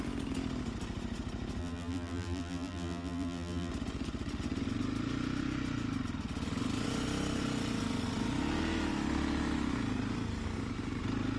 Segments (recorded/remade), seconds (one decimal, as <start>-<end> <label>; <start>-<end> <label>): 0.0-1.6 recorded; 1.6-3.7 remade; 3.7-11.4 recorded